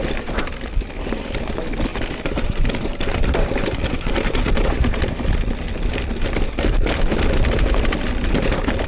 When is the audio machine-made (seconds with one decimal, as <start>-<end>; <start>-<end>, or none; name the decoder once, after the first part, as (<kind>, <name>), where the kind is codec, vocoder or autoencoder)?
1.9-5.2 (vocoder, BigVGAN v2)

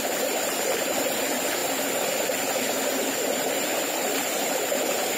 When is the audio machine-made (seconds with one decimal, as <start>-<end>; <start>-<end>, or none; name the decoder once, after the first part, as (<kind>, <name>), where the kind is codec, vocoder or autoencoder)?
3.7-4.3 (vocoder, BigVGAN v2)

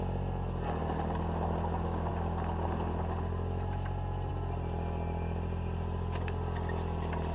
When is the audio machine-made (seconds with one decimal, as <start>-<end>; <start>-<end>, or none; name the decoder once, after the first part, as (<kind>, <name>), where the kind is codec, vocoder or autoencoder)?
none

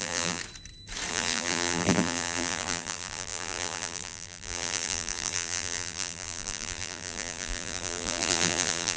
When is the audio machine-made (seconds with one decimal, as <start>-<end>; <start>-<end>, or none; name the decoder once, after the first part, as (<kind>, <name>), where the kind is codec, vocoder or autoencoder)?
0.0-0.4 (vocoder, BigVGAN v2); 1.1-9.0

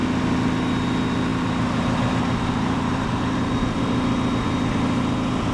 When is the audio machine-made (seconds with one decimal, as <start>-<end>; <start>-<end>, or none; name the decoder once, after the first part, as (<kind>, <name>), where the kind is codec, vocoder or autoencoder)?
1.3-3.8 (vocoder, BigVGAN v2)

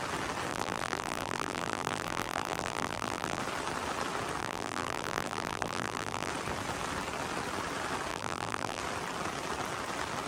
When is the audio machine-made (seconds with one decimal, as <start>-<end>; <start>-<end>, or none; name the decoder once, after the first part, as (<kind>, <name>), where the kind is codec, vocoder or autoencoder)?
0.5-3.4 (vocoder, BigVGAN v2); 4.4-6.3; 8.1-8.8